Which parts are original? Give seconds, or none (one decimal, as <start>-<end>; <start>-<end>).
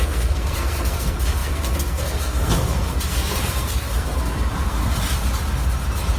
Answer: 4.8-6.2